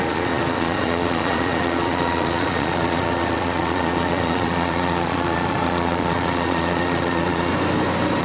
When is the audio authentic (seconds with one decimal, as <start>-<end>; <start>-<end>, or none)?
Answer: 7.5-8.2